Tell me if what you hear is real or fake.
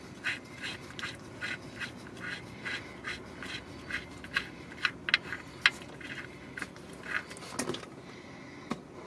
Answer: real